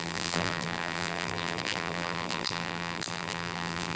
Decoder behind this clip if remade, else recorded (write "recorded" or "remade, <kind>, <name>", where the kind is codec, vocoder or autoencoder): remade, vocoder, BigVGAN v2